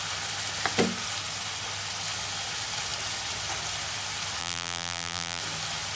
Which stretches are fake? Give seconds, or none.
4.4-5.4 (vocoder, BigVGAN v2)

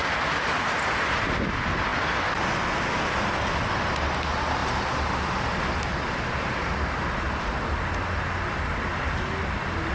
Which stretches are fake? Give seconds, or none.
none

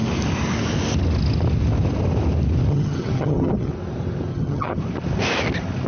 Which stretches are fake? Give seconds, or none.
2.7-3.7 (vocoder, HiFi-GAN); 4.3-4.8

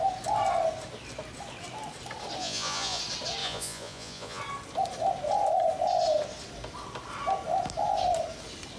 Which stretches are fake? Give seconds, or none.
2.4-3.0 (vocoder, Vocos); 3.4-4.4

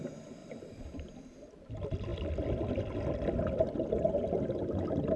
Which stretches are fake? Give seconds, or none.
0.4-1.1 (vocoder, BigVGAN v2)